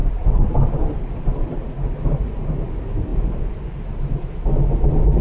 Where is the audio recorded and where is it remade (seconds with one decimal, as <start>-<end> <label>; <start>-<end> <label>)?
0.0-5.2 recorded

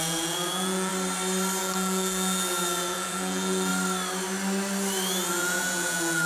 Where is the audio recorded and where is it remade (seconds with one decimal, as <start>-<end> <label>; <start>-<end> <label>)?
0.0-0.9 remade; 0.9-1.6 recorded; 1.6-3.7 remade; 3.7-5.3 recorded; 5.3-6.3 remade

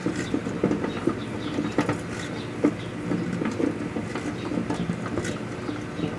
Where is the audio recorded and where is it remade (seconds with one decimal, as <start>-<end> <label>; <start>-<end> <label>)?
0.0-1.8 remade; 1.8-6.2 recorded

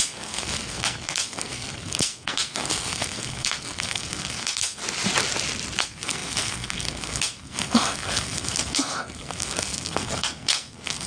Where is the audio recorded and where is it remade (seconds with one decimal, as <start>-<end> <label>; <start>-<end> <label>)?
0.0-4.8 remade; 4.8-5.8 recorded; 5.8-11.1 remade

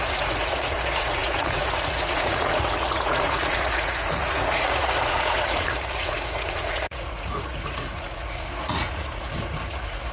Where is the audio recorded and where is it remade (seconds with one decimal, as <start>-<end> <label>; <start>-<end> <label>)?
0.0-10.1 remade

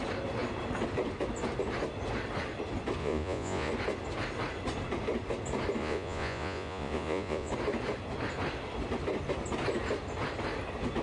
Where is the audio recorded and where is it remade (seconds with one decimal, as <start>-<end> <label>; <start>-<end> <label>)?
0.0-3.0 recorded; 3.0-3.7 remade; 3.7-5.8 recorded; 5.8-7.5 remade; 7.5-11.0 recorded

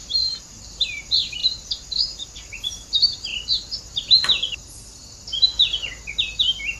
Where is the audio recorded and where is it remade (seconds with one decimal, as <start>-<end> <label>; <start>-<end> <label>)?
0.0-3.3 remade; 3.3-6.8 recorded